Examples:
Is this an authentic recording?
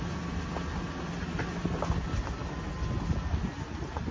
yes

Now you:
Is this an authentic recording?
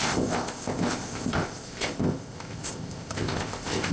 no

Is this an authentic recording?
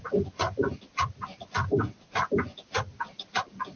yes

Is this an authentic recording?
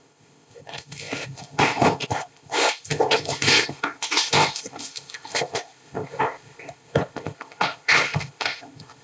no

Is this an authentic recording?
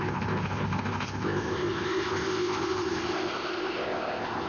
no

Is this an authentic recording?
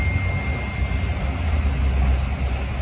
yes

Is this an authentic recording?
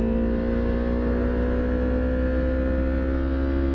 yes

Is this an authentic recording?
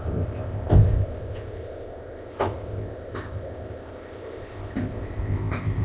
no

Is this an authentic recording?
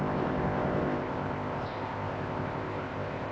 no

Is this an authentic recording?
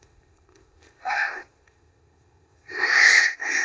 no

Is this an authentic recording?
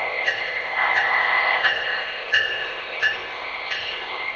no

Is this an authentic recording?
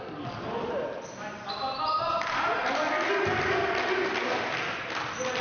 yes